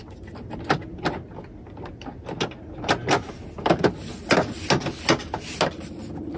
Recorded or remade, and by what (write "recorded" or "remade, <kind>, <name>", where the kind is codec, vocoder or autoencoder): recorded